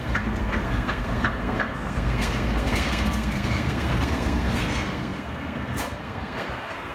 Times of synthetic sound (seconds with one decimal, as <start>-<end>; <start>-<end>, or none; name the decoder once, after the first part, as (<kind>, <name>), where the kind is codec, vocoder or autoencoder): 0.0-6.9 (codec, SNAC)